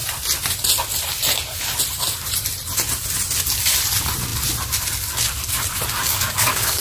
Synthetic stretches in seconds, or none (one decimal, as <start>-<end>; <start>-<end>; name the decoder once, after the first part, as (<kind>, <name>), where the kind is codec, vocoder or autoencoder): 6.0-6.8 (codec, DAC)